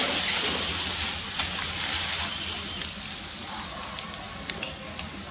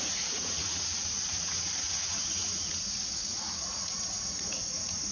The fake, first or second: second